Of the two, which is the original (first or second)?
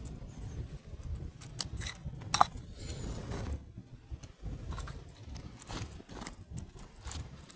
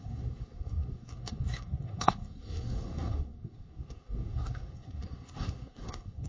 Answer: first